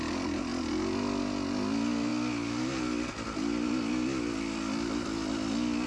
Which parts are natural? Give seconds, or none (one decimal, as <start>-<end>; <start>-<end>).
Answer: 0.0-5.9